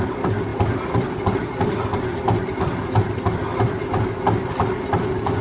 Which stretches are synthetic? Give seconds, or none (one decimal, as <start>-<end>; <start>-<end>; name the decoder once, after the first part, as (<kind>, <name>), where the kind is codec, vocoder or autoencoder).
0.5-3.0 (vocoder, BigVGAN v2)